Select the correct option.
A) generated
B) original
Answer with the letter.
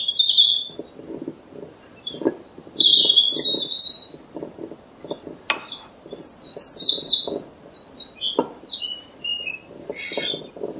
B